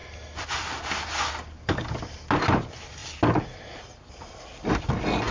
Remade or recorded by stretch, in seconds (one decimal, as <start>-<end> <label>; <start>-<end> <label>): 0.0-5.3 recorded